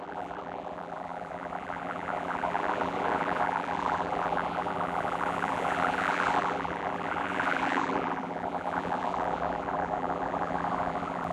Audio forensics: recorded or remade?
remade